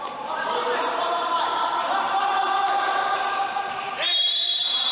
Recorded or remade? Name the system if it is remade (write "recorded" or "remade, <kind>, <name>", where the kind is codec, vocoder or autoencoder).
remade, vocoder, BigVGAN v2